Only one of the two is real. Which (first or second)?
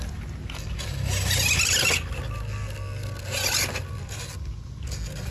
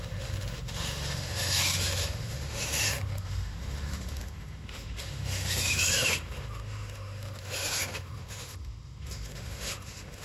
first